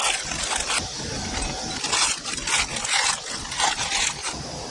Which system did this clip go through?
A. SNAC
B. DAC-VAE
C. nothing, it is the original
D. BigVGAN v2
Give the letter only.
C